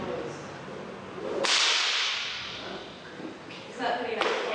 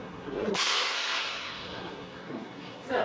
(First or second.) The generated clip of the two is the second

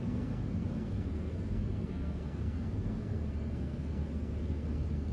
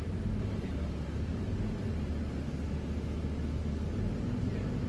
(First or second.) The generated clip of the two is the first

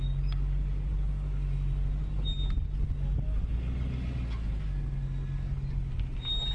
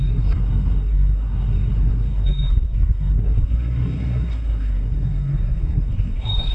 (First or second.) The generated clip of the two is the second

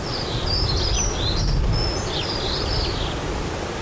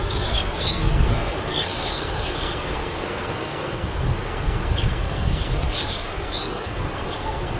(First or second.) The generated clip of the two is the second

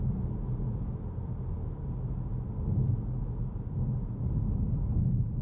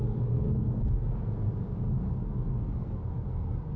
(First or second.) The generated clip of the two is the second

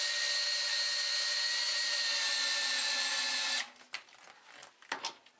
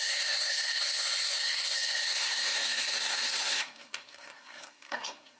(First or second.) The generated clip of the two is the second